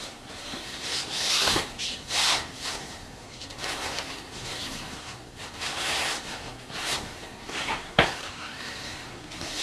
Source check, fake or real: fake